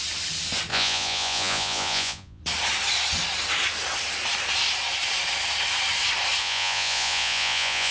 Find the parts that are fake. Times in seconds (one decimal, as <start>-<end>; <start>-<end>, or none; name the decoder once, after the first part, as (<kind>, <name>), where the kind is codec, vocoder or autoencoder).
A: 0.7-2.4 (vocoder, Vocos); 6.4-7.9